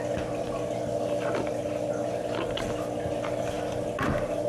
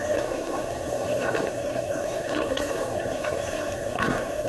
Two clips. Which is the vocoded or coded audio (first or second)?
second